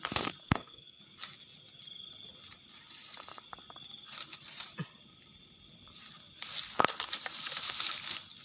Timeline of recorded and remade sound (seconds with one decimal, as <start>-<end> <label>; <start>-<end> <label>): 0.0-0.4 recorded; 0.4-1.0 remade; 1.0-8.4 recorded